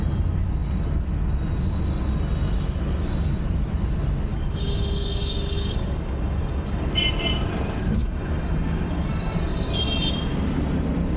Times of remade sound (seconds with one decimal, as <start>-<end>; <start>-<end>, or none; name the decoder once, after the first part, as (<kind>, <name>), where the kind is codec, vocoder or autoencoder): 4.3-6.9 (codec, DAC); 8.0-9.7